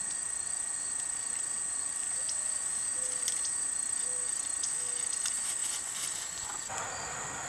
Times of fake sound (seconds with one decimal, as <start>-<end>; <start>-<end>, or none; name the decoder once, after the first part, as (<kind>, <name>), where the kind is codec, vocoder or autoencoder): 5.6-6.8 (vocoder, Vocos)